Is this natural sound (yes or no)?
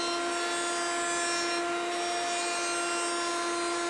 yes